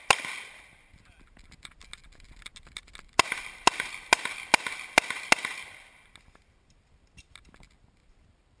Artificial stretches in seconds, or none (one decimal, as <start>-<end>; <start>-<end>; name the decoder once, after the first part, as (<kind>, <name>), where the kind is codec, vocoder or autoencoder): none